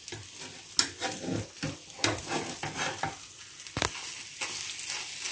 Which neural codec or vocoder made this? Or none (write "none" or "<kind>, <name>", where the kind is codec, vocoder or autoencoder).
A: none